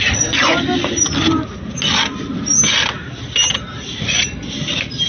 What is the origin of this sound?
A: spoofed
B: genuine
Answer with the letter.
B